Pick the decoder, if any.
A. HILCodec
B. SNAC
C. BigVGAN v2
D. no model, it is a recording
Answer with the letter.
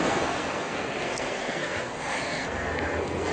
B